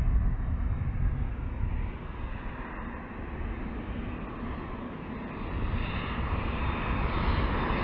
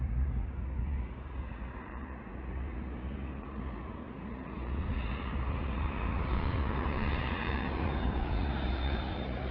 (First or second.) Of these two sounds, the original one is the first